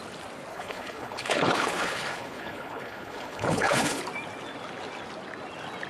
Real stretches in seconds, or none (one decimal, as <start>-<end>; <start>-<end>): 0.0-0.5; 4.0-5.9